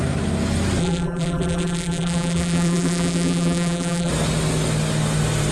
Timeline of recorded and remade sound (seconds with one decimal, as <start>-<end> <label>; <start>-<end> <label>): 0.0-0.8 recorded; 0.8-4.1 remade; 4.1-5.5 recorded